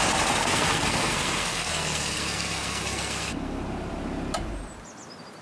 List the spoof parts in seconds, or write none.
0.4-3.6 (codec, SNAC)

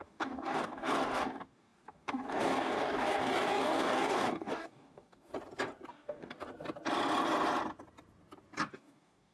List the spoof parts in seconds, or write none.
0.0-5.3 (codec, DAC); 5.9-6.5; 8.7-9.3

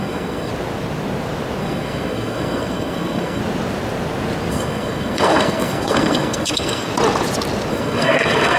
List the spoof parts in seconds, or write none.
0.0-0.5 (codec, SNAC); 1.6-3.4; 4.5-6.9; 7.7-8.6

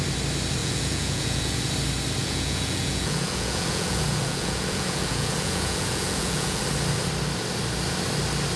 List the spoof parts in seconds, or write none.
0.6-1.7 (vocoder, Vocos); 2.2-6.6

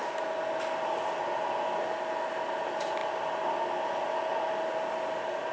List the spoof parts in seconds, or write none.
none

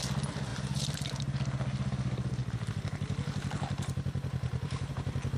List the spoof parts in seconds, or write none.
2.4-4.9 (vocoder, BigVGAN v2)

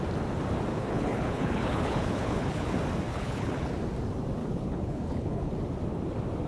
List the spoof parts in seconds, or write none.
0.7-2.7 (codec, HILCodec); 3.1-3.7; 4.4-5.5